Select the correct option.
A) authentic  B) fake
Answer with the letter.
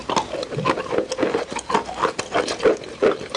A